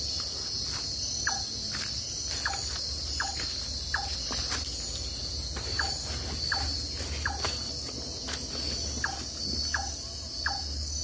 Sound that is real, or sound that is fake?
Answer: real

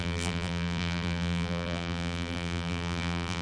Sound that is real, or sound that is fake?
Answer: fake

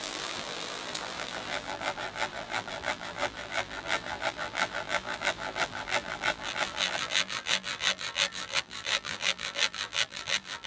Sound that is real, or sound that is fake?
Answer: fake